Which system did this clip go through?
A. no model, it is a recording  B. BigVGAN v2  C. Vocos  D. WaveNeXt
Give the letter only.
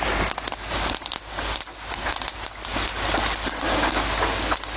A